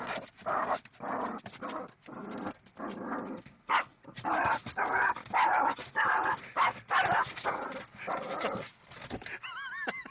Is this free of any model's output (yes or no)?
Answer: yes